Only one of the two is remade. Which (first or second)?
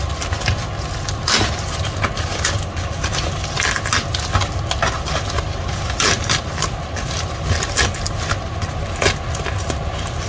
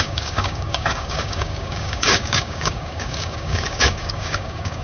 second